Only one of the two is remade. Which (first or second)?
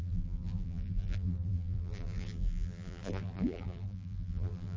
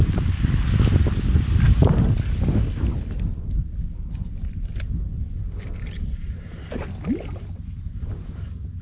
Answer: first